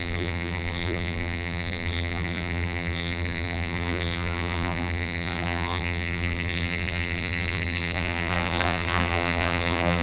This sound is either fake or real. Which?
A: fake